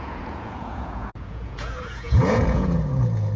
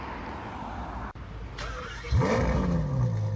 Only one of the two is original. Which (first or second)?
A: second